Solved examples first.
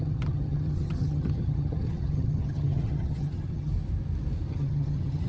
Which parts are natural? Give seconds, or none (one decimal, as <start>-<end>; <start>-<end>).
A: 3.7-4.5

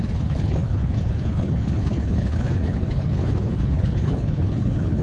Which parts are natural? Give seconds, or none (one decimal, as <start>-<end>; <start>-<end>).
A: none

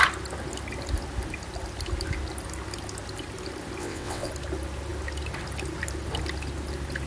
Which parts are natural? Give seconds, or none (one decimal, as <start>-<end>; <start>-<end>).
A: 0.0-3.8; 4.3-7.1

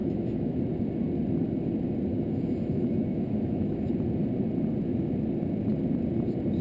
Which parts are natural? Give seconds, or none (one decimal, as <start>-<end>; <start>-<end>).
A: 0.6-2.1; 3.9-6.6